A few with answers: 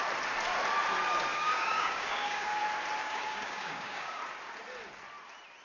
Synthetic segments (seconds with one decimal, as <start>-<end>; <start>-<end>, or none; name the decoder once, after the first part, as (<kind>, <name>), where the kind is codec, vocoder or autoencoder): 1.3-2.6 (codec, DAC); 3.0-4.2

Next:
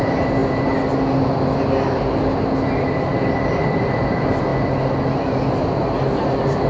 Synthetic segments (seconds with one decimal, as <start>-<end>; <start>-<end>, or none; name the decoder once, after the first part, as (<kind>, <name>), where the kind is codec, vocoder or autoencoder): none

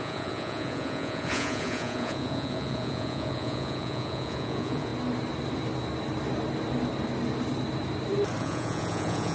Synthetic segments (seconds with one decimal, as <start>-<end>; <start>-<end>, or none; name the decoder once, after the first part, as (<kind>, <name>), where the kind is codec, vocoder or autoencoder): 0.0-4.9 (vocoder, Vocos); 8.4-9.3

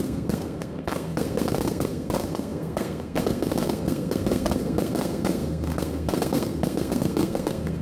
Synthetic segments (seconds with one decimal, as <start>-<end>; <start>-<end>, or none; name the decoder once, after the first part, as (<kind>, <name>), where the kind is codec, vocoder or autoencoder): 0.0-7.8 (codec, SNAC)

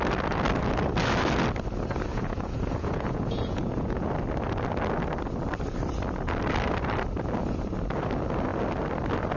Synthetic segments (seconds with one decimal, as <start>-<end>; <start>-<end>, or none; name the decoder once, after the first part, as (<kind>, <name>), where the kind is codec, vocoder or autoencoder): 2.1-4.1 (vocoder, Vocos)

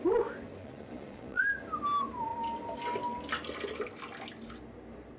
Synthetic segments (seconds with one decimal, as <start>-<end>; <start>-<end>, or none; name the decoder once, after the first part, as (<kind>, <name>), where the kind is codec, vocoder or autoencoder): 0.6-1.4 (vocoder, Vocos)

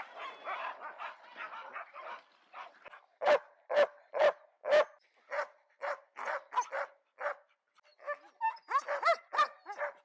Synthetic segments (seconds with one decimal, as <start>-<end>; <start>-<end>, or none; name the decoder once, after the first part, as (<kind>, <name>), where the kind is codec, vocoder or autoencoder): none

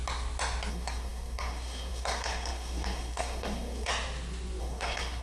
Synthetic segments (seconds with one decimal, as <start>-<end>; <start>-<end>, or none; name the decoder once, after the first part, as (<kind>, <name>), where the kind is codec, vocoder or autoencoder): 0.7-3.9 (codec, SNAC); 4.6-5.2